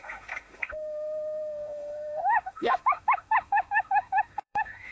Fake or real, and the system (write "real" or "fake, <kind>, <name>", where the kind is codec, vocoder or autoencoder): fake, autoencoder, DAC-VAE